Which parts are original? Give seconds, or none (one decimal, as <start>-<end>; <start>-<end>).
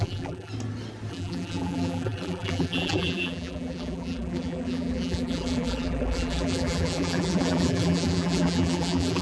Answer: 0.5-1.1